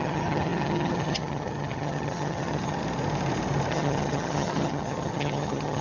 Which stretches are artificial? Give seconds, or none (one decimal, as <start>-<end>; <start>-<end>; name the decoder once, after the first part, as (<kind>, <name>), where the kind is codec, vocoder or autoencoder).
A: 0.0-2.8 (vocoder, HiFi-GAN); 3.7-5.8